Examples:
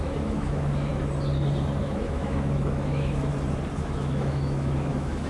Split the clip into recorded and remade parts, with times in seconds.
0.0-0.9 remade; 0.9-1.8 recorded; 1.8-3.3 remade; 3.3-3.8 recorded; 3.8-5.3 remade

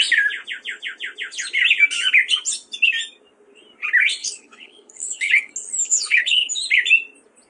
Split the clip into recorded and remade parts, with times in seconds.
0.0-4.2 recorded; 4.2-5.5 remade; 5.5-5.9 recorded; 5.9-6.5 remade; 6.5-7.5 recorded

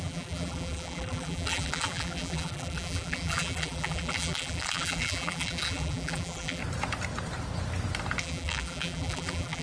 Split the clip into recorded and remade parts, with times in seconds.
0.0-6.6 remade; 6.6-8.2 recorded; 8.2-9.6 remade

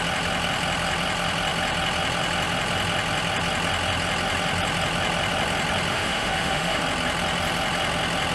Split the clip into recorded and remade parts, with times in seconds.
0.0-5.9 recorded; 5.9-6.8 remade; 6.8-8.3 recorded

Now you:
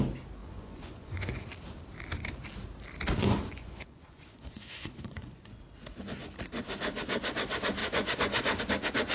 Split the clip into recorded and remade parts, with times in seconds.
0.0-0.4 recorded; 0.4-1.4 remade; 1.4-3.2 recorded; 3.2-5.6 remade; 5.6-7.8 recorded; 7.8-8.6 remade; 8.6-9.1 recorded